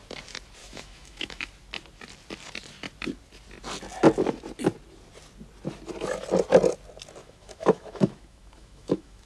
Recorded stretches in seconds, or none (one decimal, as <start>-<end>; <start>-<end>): 0.0-0.6; 1.5-7.2